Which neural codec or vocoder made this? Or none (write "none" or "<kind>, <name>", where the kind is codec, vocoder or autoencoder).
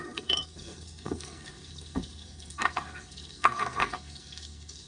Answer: codec, SNAC